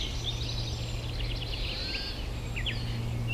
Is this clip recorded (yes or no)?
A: yes